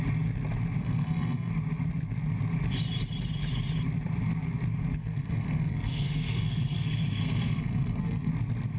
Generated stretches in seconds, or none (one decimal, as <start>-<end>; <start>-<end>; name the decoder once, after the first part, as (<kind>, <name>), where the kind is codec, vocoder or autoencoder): 0.8-1.5 (codec, SNAC); 5.0-8.3

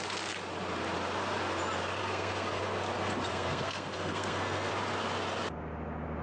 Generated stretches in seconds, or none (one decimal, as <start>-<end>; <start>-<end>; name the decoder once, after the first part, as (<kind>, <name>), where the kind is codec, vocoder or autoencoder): 2.0-2.6 (codec, SNAC); 3.3-4.7

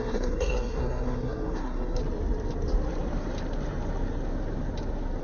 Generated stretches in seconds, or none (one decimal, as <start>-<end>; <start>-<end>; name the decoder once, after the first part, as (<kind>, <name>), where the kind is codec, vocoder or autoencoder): 0.0-2.0 (codec, SNAC)

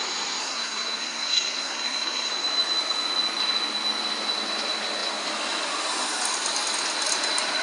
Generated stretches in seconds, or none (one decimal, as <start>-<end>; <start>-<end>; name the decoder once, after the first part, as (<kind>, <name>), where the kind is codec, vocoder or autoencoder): 0.4-2.3 (codec, SNAC)

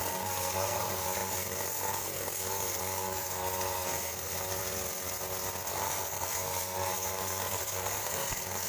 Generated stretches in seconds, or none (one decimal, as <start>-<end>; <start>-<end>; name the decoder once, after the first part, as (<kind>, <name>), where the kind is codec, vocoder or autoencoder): 0.0-4.6 (codec, SNAC); 5.7-8.7

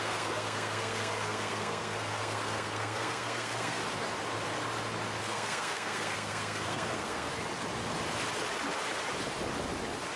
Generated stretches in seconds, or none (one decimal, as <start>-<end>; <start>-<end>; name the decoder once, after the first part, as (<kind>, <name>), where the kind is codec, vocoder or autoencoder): 0.0-3.8 (codec, SNAC); 5.2-7.3

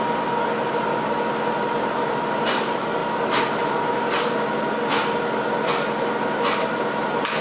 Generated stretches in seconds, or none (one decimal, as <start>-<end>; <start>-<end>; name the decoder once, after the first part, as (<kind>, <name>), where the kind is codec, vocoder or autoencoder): none

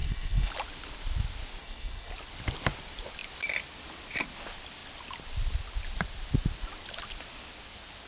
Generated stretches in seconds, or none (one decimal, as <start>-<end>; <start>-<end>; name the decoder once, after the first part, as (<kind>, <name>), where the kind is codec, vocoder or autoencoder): 0.0-0.5 (codec, SNAC); 1.6-2.1